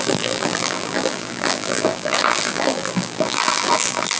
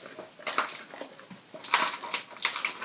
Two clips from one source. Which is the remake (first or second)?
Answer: first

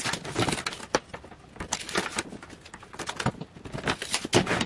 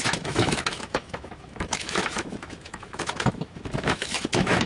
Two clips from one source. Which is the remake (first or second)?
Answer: second